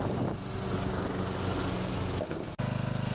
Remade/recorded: recorded